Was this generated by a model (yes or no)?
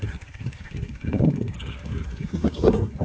yes